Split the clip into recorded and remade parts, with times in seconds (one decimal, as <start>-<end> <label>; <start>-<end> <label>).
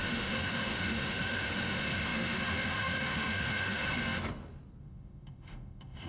0.0-4.0 remade; 4.0-4.8 recorded; 4.8-6.1 remade